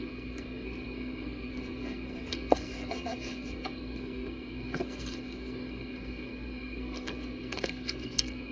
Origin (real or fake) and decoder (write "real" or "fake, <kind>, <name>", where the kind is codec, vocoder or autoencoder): fake, codec, SNAC